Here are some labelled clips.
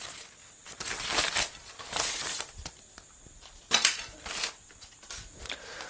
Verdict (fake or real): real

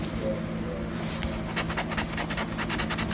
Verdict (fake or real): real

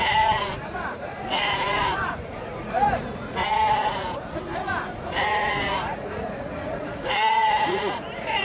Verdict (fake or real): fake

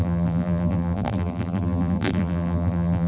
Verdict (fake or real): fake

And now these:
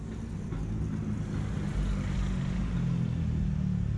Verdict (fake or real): real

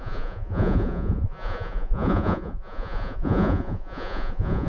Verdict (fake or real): fake